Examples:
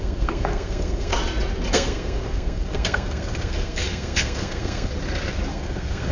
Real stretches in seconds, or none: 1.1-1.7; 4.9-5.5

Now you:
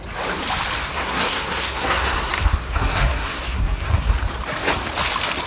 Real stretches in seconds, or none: 0.0-0.8; 4.1-5.5

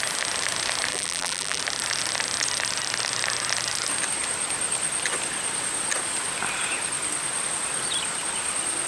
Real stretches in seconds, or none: 0.0-0.9; 1.6-8.9